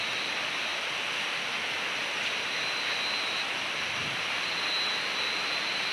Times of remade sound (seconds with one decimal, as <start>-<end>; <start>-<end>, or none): 0.7-2.1